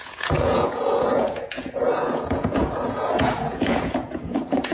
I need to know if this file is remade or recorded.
remade